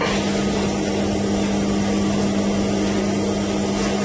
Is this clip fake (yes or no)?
no